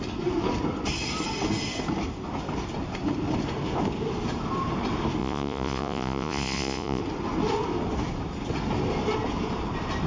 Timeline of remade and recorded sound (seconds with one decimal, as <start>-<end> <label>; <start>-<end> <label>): 0.0-5.2 recorded; 5.2-7.0 remade; 7.0-10.1 recorded